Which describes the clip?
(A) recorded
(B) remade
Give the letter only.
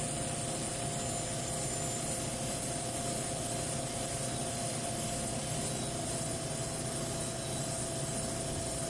A